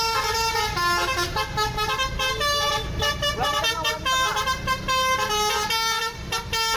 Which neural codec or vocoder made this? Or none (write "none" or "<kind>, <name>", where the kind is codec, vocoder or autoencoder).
none